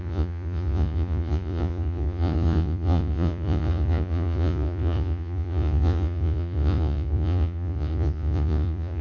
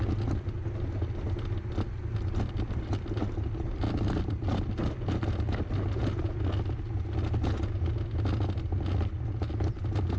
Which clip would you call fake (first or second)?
first